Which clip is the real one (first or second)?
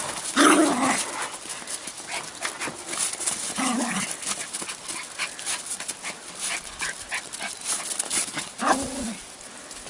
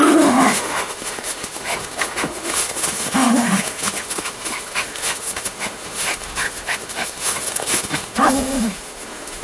first